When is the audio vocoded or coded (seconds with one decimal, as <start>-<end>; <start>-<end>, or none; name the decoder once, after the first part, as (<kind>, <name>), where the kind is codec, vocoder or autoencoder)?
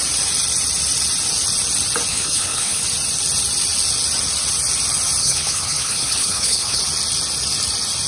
2.1-2.8 (codec, HILCodec); 5.2-6.8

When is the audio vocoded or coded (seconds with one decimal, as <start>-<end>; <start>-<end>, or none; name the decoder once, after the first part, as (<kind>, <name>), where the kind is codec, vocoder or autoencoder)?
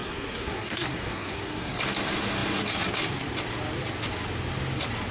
0.0-1.8 (codec, SNAC)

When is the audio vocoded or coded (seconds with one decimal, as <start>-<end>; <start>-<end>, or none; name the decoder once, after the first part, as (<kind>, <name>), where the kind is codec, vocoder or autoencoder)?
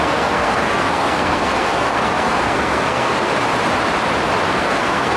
0.0-3.3 (codec, SNAC); 4.5-5.2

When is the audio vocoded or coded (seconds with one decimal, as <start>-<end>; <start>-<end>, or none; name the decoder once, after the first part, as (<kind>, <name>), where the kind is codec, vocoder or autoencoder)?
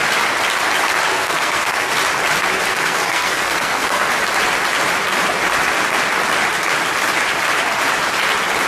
1.1-1.9 (codec, SNAC); 2.7-4.1